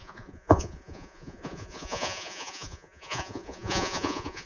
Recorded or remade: remade